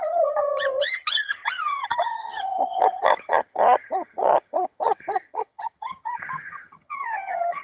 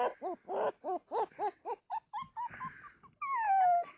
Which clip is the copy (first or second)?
first